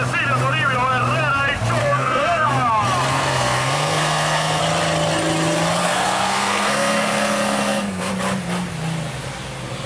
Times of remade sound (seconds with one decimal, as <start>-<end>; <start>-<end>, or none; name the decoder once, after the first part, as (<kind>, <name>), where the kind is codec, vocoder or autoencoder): 1.8-2.5 (codec, SNAC); 3.1-4.6; 5.8-8.1